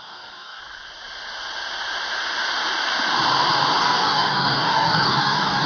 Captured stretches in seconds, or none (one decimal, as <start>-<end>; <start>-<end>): 0.6-3.8